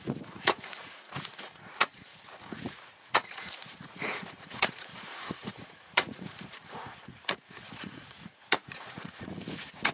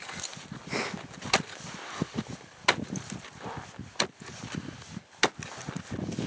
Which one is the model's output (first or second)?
first